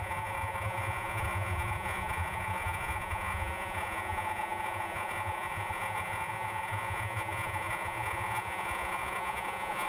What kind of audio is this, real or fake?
fake